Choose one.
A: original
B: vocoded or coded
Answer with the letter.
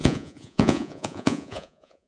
B